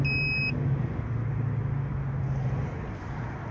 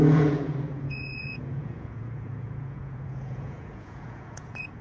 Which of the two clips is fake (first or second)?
second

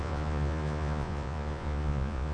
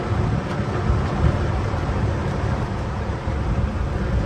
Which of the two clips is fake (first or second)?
first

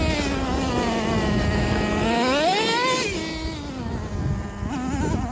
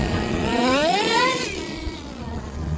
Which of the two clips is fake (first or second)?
second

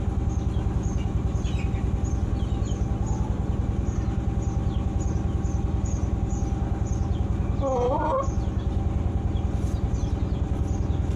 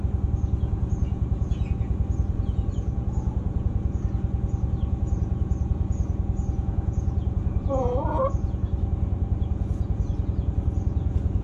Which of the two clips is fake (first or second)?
second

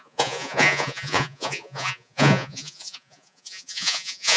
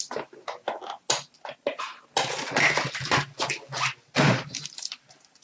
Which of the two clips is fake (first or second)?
first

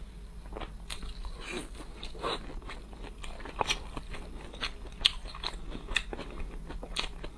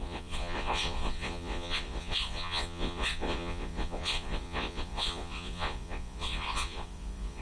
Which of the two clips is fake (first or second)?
second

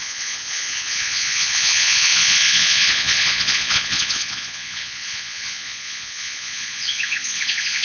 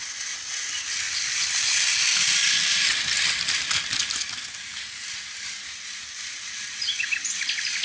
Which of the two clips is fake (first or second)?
first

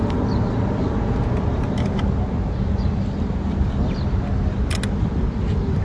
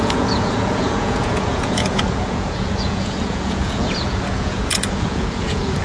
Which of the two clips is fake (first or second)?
second